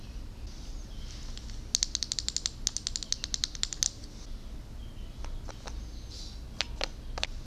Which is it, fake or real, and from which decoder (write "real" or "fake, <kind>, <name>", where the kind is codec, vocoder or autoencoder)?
real